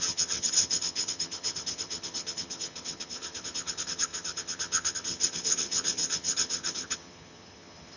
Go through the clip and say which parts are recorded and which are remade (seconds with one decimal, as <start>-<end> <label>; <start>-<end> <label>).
0.0-8.0 remade

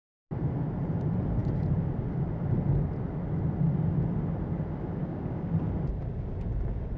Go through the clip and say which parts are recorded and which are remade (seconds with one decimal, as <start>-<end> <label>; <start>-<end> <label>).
0.0-5.0 recorded; 5.0-5.5 remade; 5.5-7.0 recorded